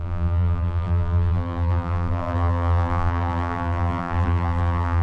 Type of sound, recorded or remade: remade